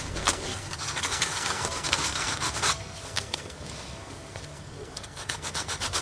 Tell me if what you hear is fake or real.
fake